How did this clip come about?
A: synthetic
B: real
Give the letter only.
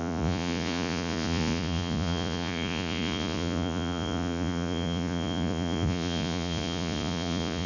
A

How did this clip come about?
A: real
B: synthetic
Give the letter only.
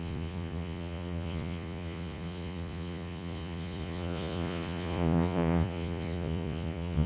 B